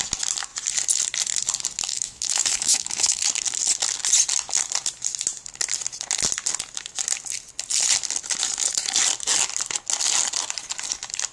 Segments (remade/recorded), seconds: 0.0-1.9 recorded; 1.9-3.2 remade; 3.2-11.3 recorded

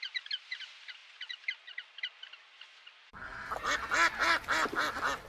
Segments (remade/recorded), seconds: 0.0-5.3 recorded

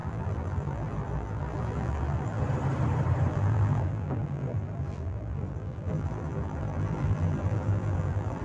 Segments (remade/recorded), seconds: 0.0-2.4 remade; 2.4-3.3 recorded; 3.3-8.4 remade

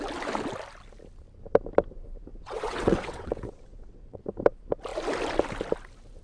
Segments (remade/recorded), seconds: 0.0-2.3 recorded; 2.3-4.2 remade; 4.2-6.2 recorded